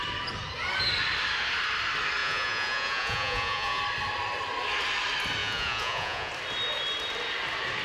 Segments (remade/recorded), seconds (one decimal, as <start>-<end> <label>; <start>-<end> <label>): 0.0-2.2 recorded; 2.2-3.8 remade; 3.8-5.4 recorded; 5.4-6.3 remade; 6.3-7.8 recorded